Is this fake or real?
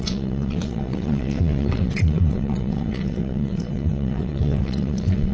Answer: fake